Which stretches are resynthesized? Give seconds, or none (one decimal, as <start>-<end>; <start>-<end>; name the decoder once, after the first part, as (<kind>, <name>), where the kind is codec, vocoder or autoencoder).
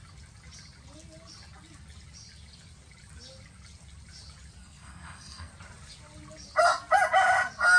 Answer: 4.6-5.5 (codec, SNAC)